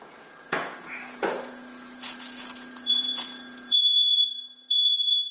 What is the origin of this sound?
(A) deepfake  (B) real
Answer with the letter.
A